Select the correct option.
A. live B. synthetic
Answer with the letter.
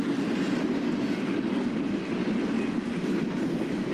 A